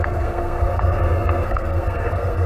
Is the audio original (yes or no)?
no